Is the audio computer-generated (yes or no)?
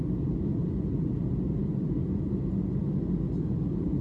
no